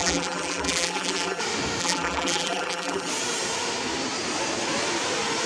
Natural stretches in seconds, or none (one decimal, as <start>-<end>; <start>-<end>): 1.4-1.8; 3.1-5.5